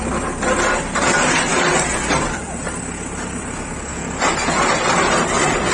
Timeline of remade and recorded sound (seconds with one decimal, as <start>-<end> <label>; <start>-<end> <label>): 0.0-3.9 recorded; 3.9-4.6 remade; 4.6-5.7 recorded